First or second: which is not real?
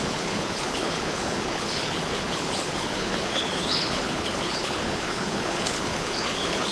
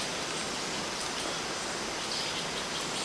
first